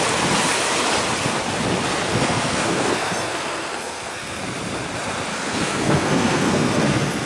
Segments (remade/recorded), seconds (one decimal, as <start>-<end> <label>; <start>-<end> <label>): 0.0-2.1 recorded; 2.1-4.4 remade; 4.4-5.3 recorded; 5.3-7.3 remade